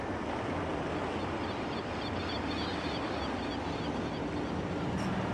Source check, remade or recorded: recorded